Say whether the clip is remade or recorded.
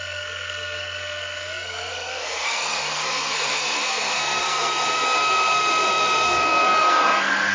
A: remade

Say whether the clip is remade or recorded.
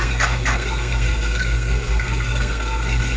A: remade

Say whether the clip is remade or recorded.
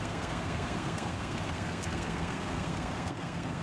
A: remade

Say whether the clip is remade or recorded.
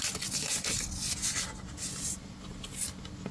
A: recorded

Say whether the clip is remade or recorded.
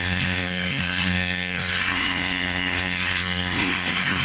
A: remade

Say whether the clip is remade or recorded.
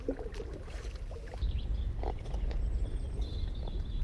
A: recorded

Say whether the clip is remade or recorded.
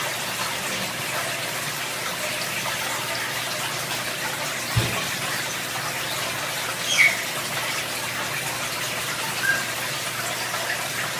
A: recorded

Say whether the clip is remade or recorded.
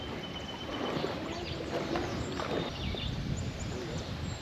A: recorded